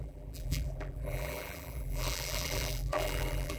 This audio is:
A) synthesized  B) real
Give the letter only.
A